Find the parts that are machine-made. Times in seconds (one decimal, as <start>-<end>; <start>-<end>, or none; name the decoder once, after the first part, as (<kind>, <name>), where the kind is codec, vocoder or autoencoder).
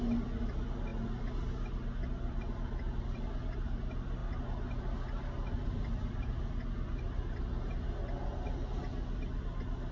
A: none